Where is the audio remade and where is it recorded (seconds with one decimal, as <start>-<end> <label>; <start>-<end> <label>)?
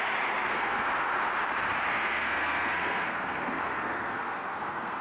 0.0-0.5 recorded; 0.5-1.1 remade; 1.1-1.9 recorded; 1.9-5.0 remade